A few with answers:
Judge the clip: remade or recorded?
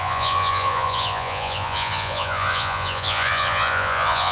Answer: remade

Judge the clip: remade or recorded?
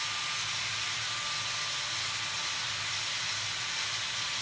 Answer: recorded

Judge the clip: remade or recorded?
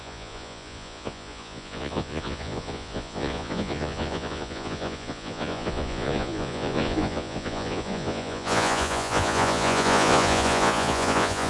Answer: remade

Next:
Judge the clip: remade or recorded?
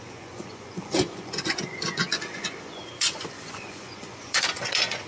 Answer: remade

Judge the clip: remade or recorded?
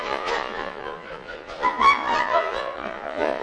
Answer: remade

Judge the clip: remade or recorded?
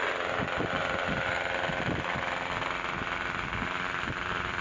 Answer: recorded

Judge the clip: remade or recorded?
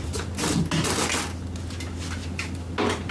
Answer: recorded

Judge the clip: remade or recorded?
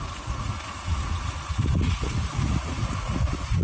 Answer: remade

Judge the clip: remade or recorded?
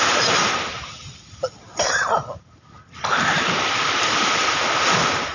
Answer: recorded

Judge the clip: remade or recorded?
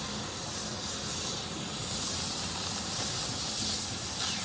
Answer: recorded